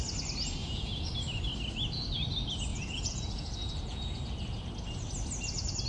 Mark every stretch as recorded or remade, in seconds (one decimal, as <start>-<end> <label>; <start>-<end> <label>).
0.0-0.6 recorded; 0.6-1.1 remade; 1.1-2.7 recorded; 2.7-4.2 remade; 4.2-5.9 recorded